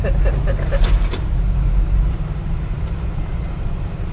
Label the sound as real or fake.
fake